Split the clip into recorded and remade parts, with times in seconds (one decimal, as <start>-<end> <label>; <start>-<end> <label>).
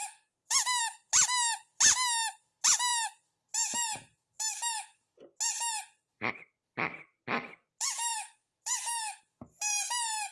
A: 0.0-10.3 recorded